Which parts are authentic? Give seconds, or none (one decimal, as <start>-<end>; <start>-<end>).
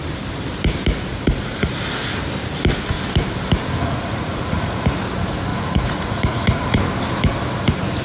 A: 0.0-1.1; 1.7-3.8; 5.0-5.5; 6.8-8.0